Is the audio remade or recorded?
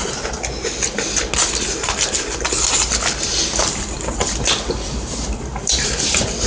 recorded